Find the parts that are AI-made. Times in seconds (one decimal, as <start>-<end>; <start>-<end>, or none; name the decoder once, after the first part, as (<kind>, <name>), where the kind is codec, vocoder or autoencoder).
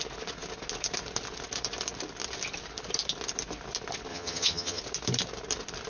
4.1-4.8 (vocoder, HiFi-GAN)